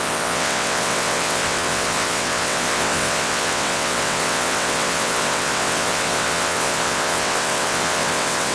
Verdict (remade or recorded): remade